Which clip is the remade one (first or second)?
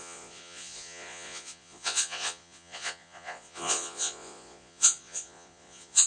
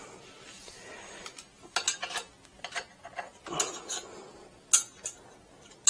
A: first